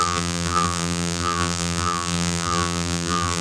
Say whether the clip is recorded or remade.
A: remade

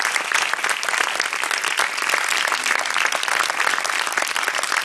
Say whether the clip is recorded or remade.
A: recorded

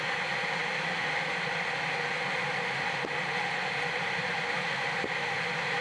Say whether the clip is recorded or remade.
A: recorded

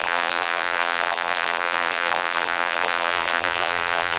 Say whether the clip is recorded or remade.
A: remade